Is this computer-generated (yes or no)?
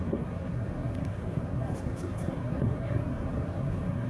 yes